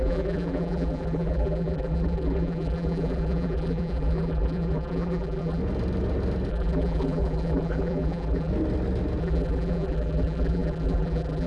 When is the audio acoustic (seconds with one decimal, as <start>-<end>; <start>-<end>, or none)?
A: 5.6-6.5; 8.5-9.2